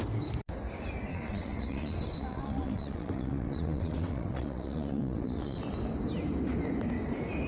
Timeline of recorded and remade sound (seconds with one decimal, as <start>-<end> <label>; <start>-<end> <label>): 0.0-1.1 recorded; 1.1-5.6 remade; 5.6-7.5 recorded